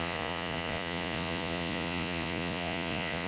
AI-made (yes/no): yes